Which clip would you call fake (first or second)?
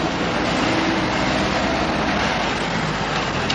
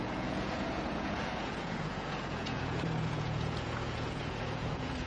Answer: second